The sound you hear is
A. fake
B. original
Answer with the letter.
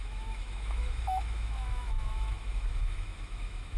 A